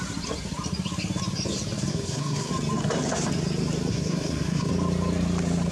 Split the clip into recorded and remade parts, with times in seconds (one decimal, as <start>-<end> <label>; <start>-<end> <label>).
0.0-1.9 recorded; 1.9-2.5 remade; 2.5-3.9 recorded; 3.9-4.7 remade; 4.7-5.7 recorded